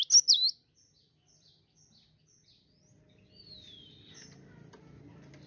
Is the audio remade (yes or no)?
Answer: no